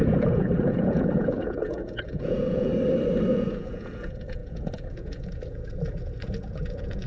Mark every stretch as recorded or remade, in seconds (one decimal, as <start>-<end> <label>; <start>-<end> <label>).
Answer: 0.0-2.7 remade; 2.7-3.3 recorded; 3.3-7.1 remade

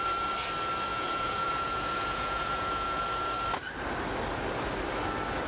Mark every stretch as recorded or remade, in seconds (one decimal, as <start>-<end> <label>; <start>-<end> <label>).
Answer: 0.0-0.9 recorded; 0.9-3.0 remade; 3.0-5.5 recorded

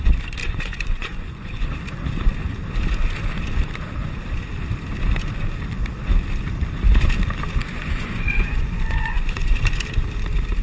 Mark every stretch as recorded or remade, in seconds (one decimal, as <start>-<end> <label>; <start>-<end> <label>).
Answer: 0.0-0.4 recorded; 0.4-1.7 remade; 1.7-7.6 recorded; 7.6-9.6 remade; 9.6-10.6 recorded

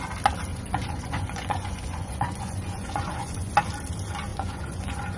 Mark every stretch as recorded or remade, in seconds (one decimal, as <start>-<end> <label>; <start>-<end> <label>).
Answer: 0.0-0.5 recorded; 0.5-3.5 remade; 3.5-4.3 recorded; 4.3-5.2 remade

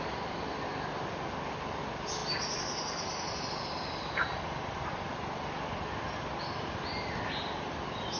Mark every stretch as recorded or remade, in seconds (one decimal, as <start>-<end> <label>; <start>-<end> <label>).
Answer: 0.0-8.2 recorded